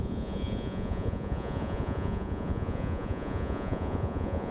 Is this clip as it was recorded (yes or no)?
no